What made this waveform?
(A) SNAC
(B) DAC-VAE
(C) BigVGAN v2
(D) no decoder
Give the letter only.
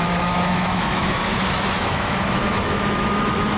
B